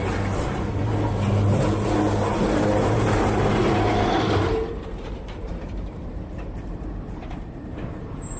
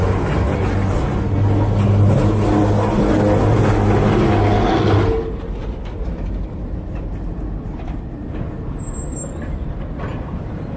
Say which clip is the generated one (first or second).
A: first